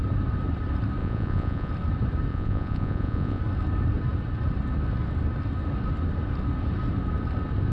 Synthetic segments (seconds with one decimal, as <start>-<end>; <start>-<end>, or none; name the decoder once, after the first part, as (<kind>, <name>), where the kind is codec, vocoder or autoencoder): 1.0-1.7 (vocoder, Vocos); 2.3-3.4

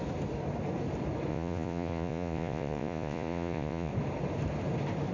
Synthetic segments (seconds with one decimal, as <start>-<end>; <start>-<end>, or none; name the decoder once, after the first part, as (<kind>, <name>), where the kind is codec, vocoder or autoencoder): 1.3-3.9 (vocoder, Vocos)

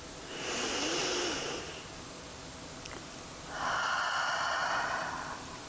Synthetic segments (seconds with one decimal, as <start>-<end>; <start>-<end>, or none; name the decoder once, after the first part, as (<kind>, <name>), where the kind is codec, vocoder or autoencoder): none

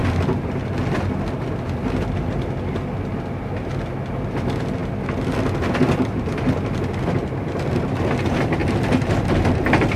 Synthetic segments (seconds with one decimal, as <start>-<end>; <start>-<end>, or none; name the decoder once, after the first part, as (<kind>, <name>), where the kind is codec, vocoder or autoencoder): none

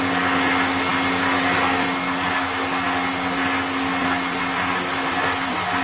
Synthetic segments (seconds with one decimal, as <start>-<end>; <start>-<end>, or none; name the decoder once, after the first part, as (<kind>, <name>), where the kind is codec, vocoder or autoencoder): none

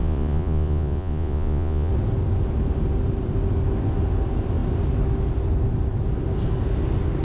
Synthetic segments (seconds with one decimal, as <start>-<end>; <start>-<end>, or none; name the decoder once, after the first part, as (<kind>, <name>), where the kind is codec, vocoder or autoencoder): 0.0-1.9 (vocoder, Vocos)

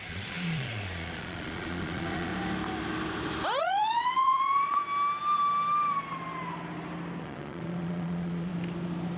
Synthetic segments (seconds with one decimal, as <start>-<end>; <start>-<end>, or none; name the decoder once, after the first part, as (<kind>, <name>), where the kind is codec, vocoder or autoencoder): 0.0-2.3 (vocoder, Vocos); 3.6-4.8; 7.2-8.5